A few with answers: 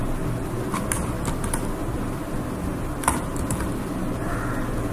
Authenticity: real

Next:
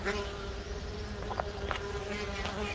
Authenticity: real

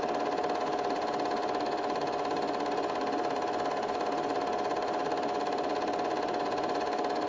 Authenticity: real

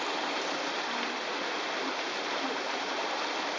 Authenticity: real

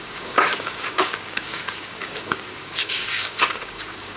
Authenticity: fake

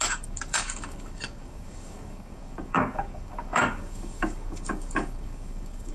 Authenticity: fake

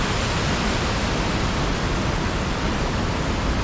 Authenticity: real